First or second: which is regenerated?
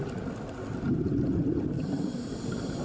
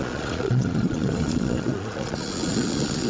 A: second